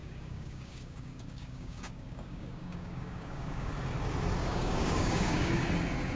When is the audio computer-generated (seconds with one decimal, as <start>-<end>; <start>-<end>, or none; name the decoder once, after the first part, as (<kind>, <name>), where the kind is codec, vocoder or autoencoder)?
0.0-3.7 (codec, DAC); 4.4-5.6